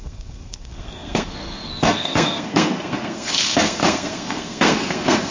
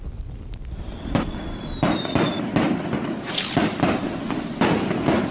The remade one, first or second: first